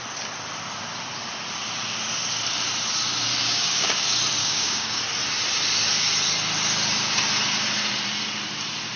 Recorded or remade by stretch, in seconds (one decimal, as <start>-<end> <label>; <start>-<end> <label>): 0.0-3.4 recorded; 3.4-4.0 remade; 4.0-4.4 recorded; 4.4-5.0 remade; 5.0-9.0 recorded